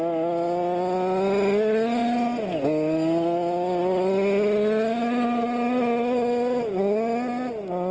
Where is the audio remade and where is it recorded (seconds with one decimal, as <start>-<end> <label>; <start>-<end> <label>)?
0.0-7.9 recorded